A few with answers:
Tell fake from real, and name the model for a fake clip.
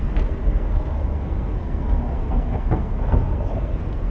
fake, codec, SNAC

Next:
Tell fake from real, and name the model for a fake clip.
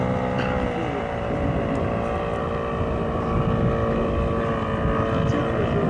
real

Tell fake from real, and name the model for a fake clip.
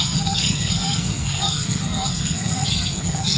fake, codec, SNAC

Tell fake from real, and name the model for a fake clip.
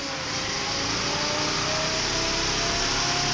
real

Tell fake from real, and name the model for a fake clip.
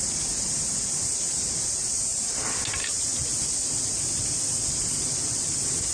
real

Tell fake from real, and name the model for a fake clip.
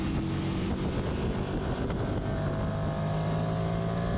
real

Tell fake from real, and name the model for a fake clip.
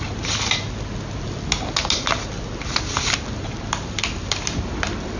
real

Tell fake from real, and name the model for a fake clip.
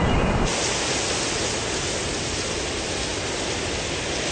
real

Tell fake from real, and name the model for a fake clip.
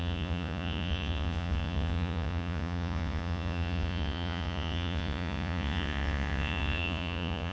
fake, vocoder, Vocos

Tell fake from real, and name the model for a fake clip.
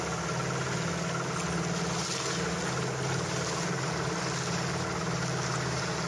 real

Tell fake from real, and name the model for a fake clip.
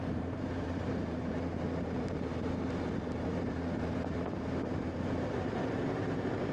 fake, vocoder, BigVGAN v2